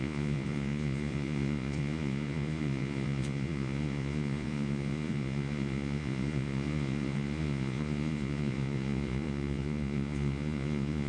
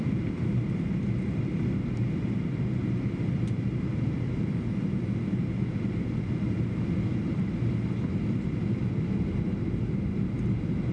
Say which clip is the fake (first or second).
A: first